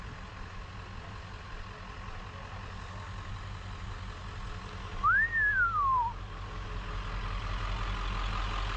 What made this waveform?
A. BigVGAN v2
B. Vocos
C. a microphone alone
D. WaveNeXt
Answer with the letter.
C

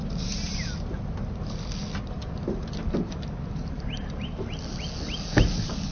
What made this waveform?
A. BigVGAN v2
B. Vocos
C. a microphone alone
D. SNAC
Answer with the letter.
C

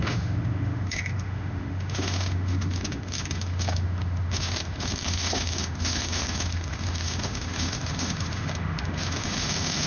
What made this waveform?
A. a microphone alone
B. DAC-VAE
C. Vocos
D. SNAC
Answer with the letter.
B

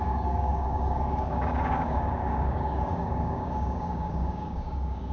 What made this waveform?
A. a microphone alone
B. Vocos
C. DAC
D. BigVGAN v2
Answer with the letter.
C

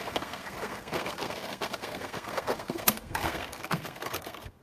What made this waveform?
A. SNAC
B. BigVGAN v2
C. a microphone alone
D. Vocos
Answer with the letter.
A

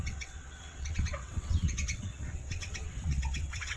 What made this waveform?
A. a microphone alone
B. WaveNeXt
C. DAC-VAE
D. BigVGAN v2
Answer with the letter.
B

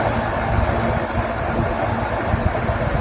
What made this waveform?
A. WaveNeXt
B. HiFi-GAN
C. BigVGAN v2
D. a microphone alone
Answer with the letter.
D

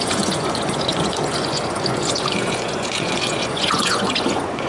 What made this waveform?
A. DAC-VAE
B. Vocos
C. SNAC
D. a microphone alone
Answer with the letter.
B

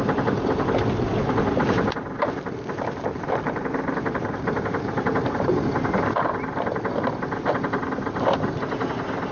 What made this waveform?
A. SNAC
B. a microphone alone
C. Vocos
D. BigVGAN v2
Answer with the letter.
B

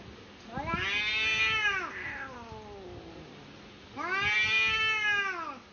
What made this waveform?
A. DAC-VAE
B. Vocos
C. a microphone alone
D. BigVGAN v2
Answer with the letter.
C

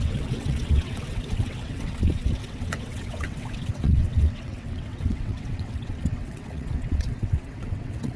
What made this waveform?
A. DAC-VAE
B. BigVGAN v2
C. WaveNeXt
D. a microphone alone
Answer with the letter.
C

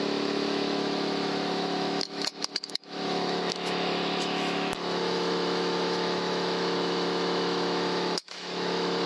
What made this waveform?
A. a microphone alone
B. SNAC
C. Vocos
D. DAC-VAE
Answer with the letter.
D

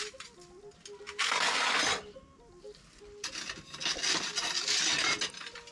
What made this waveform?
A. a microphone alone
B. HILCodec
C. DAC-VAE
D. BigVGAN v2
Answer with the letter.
A